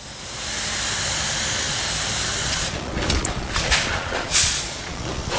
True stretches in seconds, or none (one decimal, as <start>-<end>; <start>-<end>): 0.0-2.4